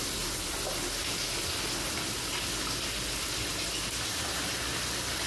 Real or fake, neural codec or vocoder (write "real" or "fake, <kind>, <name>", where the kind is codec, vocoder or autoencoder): real